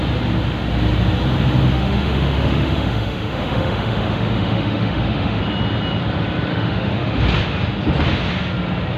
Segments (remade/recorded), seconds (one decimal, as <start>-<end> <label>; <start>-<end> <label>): 0.0-1.7 recorded; 1.7-5.4 remade; 5.4-6.5 recorded; 6.5-7.2 remade; 7.2-9.0 recorded

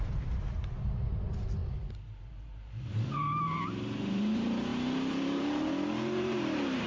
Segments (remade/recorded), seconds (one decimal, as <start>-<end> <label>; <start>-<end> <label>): 0.0-1.6 remade; 1.6-2.2 recorded; 2.2-6.9 remade

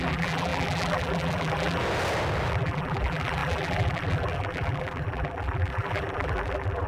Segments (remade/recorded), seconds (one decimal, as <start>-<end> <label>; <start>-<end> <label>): 0.0-1.8 remade; 1.8-2.5 recorded; 2.5-6.9 remade

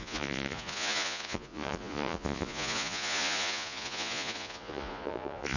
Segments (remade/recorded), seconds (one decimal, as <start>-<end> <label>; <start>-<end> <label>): 0.0-5.6 remade

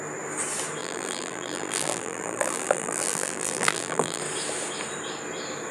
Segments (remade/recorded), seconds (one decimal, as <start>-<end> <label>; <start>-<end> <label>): 0.0-0.8 recorded; 0.8-4.2 remade; 4.2-5.7 recorded

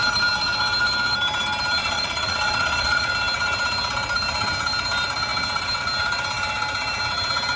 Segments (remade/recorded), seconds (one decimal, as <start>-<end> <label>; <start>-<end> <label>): 0.0-1.8 recorded; 1.8-3.1 remade; 3.1-7.6 recorded